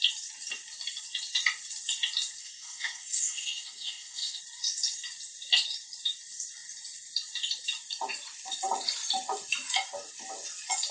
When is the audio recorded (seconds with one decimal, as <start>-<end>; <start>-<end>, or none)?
0.0-2.4; 4.4-10.9

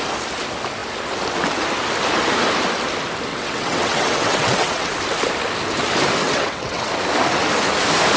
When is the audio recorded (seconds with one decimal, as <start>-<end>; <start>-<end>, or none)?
0.0-3.3; 4.9-6.2; 6.9-8.2

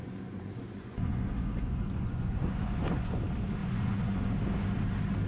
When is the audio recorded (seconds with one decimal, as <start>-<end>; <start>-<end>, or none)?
3.2-3.6; 4.3-5.3

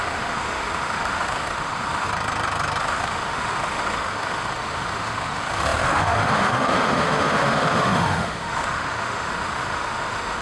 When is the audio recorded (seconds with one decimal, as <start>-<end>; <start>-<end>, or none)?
2.1-2.8